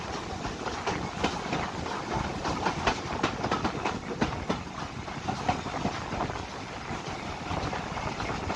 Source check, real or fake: real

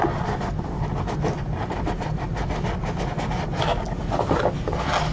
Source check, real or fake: real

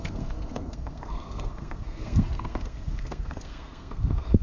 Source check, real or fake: fake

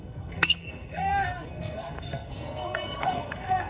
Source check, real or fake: fake